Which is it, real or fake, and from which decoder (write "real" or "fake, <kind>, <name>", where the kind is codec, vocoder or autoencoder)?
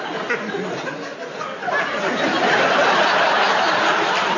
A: real